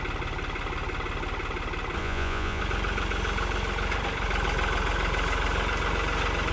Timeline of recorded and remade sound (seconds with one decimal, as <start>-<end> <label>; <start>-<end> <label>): 0.0-2.0 recorded; 2.0-2.6 remade; 2.6-6.5 recorded